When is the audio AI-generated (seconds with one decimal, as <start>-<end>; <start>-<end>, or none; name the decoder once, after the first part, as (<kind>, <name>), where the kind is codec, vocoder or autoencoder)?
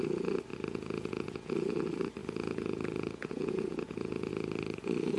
0.5-1.5 (vocoder, Vocos); 2.2-4.3